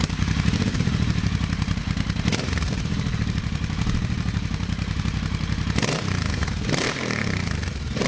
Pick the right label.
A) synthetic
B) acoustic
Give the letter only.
A